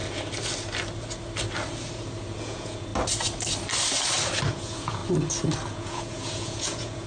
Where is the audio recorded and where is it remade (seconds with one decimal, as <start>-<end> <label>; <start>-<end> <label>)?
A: 0.0-2.4 recorded; 2.4-2.9 remade; 2.9-4.5 recorded; 4.5-5.0 remade; 5.0-5.7 recorded; 5.7-7.1 remade